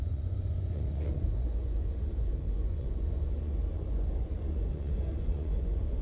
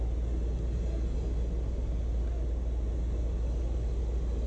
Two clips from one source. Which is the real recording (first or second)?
second